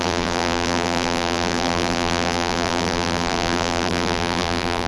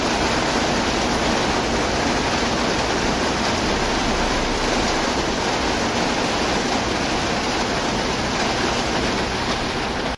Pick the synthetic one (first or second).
first